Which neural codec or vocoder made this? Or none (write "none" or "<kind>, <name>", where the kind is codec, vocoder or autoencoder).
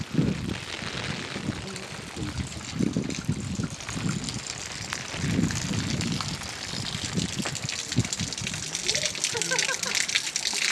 none